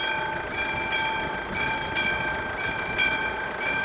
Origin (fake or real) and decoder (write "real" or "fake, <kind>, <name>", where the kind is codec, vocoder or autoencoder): real